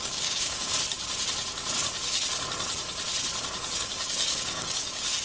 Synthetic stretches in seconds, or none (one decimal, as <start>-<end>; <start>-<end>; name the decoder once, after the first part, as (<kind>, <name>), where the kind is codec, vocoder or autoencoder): 0.0-0.7 (codec, DAC); 3.8-5.2